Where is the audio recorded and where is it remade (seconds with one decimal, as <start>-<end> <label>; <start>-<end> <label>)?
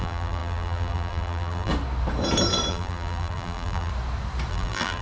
0.0-1.7 remade; 1.7-2.7 recorded; 2.7-3.9 remade; 3.9-4.5 recorded; 4.5-5.0 remade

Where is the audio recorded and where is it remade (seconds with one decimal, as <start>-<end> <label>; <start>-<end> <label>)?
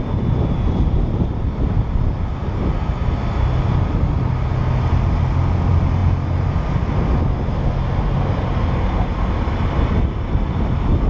0.0-11.1 recorded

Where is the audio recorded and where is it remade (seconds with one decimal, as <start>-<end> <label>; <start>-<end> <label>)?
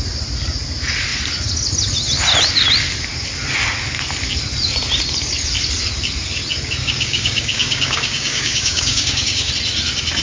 0.0-6.8 recorded; 6.8-9.5 remade; 9.5-10.2 recorded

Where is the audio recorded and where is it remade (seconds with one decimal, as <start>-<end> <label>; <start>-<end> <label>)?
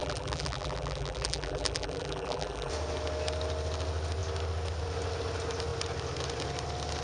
0.0-2.7 remade; 2.7-7.0 recorded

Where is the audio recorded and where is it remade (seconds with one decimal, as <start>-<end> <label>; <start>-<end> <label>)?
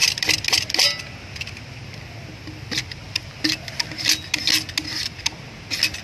0.0-6.0 recorded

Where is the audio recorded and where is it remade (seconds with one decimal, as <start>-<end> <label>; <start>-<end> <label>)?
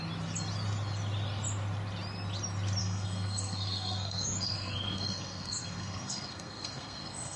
0.0-2.8 recorded; 2.8-7.4 remade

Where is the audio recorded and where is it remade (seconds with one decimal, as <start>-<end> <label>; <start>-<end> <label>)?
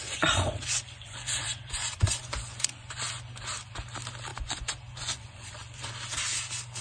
0.0-3.0 remade; 3.0-4.3 recorded; 4.3-5.9 remade; 5.9-6.8 recorded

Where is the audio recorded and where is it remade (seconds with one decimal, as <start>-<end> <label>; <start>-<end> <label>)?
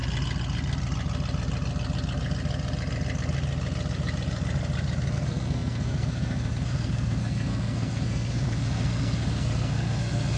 0.0-5.1 recorded; 5.1-10.4 remade